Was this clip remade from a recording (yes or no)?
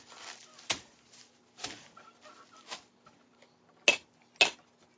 no